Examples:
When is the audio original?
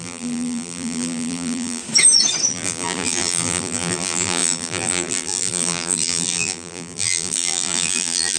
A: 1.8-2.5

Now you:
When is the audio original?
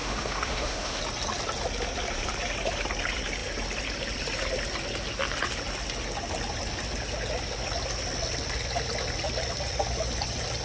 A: 1.0-10.6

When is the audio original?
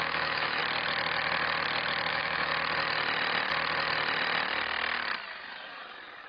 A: 0.6-2.1; 2.5-6.3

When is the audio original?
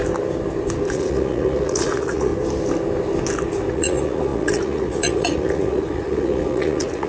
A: 0.0-0.9; 2.3-3.7